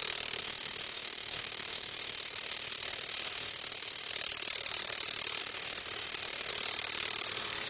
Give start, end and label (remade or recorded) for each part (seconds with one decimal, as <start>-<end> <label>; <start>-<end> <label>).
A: 0.0-0.4 recorded; 0.4-4.1 remade; 4.1-5.4 recorded; 5.4-6.5 remade; 6.5-7.7 recorded